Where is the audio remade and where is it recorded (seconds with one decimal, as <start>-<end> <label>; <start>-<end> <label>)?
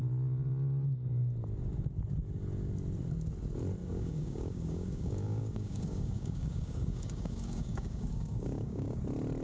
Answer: 0.0-3.8 recorded; 3.8-9.0 remade; 9.0-9.4 recorded